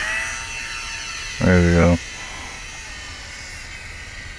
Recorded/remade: recorded